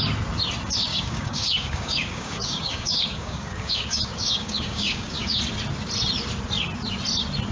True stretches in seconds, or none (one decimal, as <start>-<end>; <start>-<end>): 0.0-0.9; 5.4-7.5